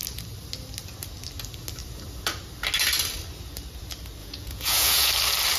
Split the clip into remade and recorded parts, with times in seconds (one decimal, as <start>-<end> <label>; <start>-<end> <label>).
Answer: 0.0-4.2 recorded; 4.2-5.1 remade; 5.1-5.6 recorded